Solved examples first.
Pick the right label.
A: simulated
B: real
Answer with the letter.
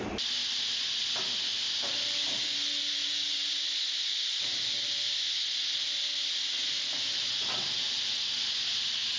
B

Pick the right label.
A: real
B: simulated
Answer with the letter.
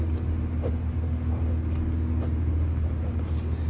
A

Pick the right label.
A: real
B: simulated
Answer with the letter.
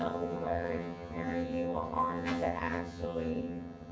B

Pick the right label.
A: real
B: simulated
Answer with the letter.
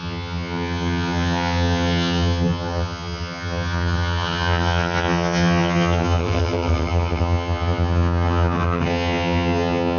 B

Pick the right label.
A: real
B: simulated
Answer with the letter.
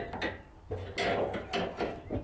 A